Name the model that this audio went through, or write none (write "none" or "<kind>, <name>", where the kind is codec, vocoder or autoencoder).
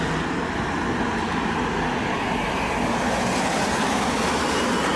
none